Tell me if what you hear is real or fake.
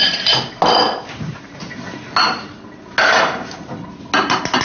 real